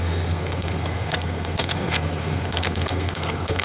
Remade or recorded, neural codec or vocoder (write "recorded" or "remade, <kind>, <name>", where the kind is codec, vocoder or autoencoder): remade, codec, SNAC